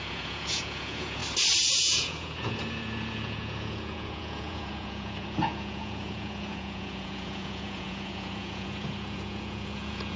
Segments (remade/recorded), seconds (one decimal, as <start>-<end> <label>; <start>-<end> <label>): 0.0-1.2 remade; 1.2-1.8 recorded; 1.8-10.2 remade